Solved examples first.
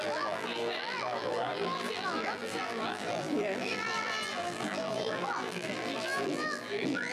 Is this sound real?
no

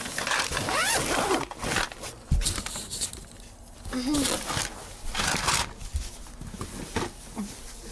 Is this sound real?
yes